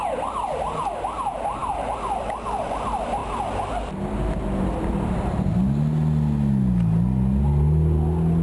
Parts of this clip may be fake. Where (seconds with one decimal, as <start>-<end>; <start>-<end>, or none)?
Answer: none